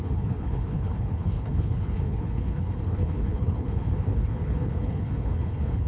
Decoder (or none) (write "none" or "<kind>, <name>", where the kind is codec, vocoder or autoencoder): codec, HILCodec